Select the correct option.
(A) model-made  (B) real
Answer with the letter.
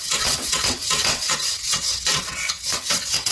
A